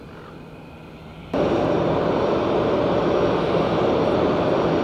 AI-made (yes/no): no